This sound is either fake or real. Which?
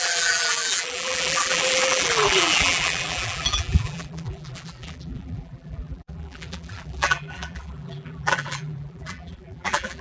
fake